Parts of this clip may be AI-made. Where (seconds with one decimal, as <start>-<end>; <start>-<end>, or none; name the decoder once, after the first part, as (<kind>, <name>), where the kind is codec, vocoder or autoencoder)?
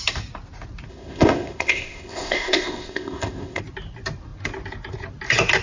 0.9-3.6 (codec, ZipCodec)